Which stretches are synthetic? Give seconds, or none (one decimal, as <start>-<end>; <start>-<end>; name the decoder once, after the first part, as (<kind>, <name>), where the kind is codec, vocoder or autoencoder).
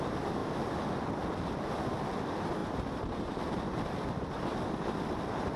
2.6-3.4 (vocoder, BigVGAN v2)